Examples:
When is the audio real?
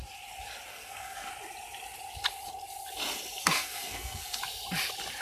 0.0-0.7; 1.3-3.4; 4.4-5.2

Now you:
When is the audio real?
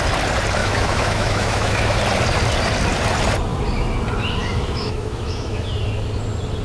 0.0-0.6; 2.0-4.4; 5.7-6.6